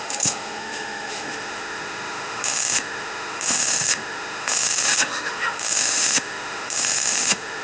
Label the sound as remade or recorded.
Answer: remade